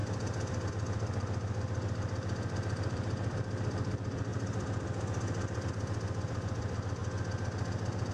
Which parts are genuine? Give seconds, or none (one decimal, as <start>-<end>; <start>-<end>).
7.0-8.1